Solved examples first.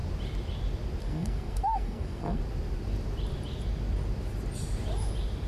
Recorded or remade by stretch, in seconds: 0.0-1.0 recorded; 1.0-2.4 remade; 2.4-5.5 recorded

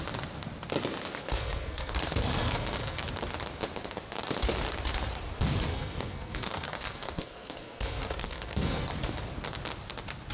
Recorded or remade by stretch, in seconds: 0.0-1.2 recorded; 1.2-3.1 remade; 3.1-5.7 recorded; 5.7-8.9 remade; 8.9-10.3 recorded

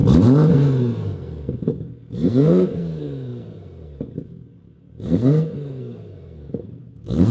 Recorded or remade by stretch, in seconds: 0.0-0.5 recorded; 0.5-7.3 remade

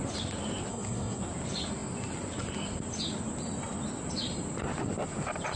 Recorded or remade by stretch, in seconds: 0.0-0.7 recorded; 0.7-1.2 remade; 1.2-5.6 recorded